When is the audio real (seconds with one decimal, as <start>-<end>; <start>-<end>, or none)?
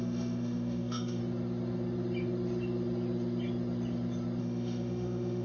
1.2-4.4